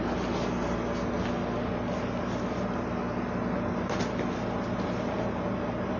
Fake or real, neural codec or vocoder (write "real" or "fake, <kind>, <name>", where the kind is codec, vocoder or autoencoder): real